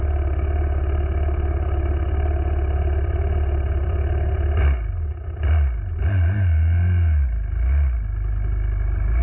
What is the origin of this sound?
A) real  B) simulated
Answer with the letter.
A